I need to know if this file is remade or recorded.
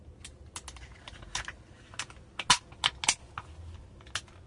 recorded